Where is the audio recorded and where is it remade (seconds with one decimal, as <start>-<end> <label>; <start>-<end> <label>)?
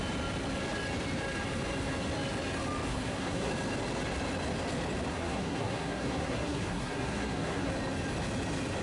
0.0-2.9 recorded; 2.9-3.5 remade; 3.5-5.1 recorded; 5.1-7.7 remade; 7.7-8.8 recorded